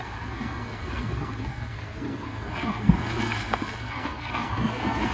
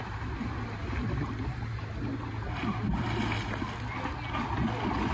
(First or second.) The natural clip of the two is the second